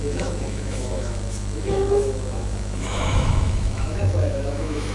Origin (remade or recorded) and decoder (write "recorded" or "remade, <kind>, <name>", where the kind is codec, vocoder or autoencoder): remade, autoencoder, DAC-VAE